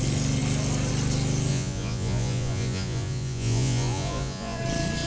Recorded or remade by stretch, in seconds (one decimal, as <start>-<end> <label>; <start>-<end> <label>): 0.0-1.5 recorded; 1.5-4.6 remade; 4.6-5.1 recorded